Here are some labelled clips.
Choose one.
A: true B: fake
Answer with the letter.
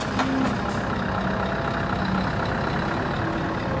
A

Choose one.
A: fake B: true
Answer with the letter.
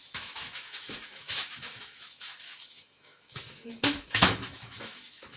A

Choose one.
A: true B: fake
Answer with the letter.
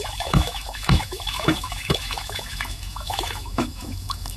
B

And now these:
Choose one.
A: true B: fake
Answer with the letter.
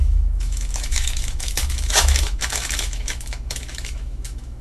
B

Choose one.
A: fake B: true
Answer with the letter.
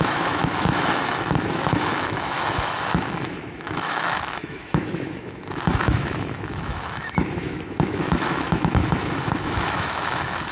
A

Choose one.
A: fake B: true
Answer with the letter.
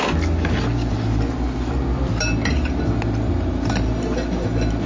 B